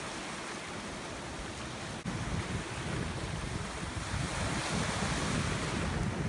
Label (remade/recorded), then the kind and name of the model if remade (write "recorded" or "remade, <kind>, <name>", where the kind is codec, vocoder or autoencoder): recorded